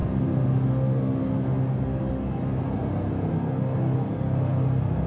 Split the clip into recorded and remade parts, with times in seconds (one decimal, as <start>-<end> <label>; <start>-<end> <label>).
0.0-5.1 recorded